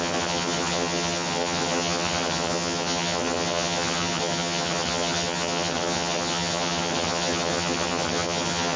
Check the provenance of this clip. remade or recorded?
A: remade